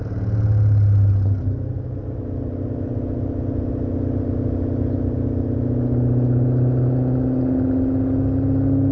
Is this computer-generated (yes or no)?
no